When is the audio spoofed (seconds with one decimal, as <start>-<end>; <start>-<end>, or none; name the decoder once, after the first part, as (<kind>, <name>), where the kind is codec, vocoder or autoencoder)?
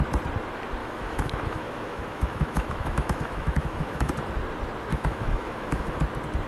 0.8-4.1 (autoencoder, DAC-VAE); 4.9-6.0